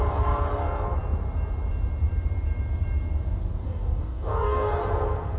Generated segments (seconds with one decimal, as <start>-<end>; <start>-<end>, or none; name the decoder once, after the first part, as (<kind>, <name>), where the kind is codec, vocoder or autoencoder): 3.6-4.8 (codec, DAC)